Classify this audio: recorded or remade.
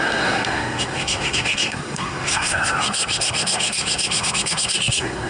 remade